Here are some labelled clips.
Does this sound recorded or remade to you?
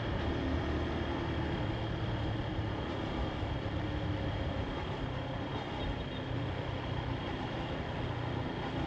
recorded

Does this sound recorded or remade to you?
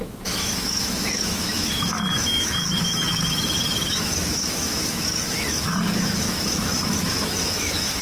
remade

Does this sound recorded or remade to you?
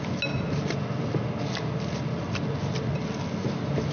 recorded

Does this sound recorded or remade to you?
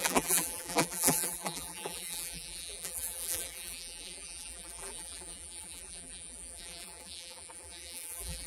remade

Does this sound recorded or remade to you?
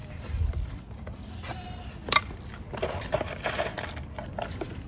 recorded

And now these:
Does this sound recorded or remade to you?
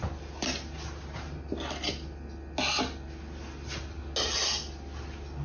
recorded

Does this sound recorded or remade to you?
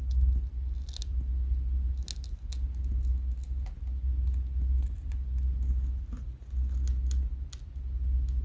recorded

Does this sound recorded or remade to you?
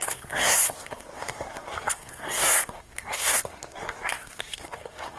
remade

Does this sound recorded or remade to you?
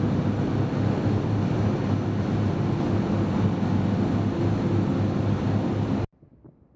recorded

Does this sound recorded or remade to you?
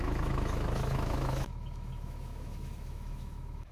remade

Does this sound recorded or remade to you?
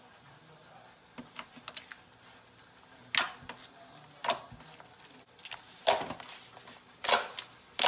recorded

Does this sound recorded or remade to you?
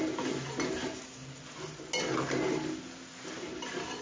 recorded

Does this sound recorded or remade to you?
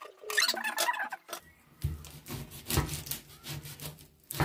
recorded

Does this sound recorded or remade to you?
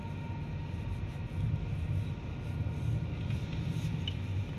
recorded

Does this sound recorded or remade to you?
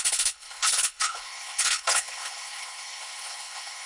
remade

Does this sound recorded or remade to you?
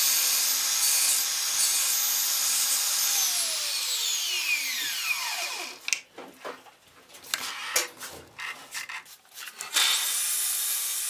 recorded